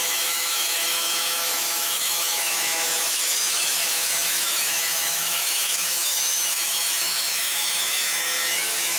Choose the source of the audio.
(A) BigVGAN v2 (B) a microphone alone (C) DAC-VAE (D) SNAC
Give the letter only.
C